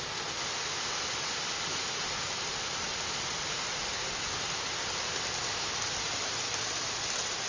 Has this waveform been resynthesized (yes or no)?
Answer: no